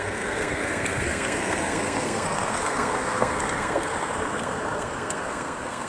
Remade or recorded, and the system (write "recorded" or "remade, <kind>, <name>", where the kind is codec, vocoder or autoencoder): remade, codec, SNAC